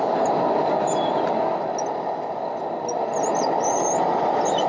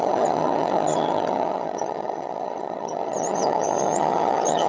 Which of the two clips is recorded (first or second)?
first